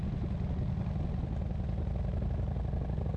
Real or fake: real